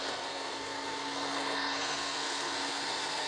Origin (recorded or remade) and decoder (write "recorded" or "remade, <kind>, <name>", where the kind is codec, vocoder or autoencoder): remade, codec, SNAC